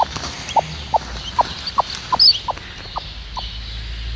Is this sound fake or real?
real